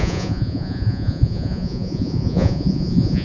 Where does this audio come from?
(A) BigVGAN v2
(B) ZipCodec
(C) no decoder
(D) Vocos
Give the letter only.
D